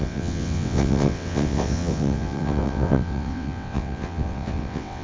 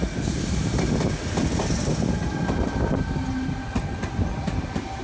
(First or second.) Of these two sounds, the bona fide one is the second